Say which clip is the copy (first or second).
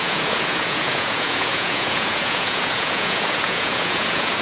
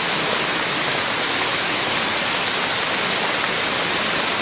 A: first